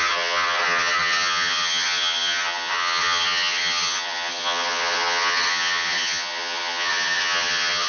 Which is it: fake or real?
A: fake